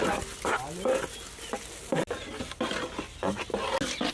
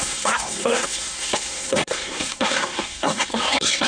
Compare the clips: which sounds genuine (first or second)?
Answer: first